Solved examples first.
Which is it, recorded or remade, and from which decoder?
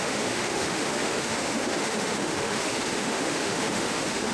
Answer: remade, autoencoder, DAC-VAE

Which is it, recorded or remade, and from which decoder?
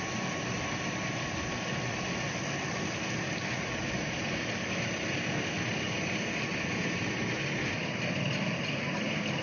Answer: recorded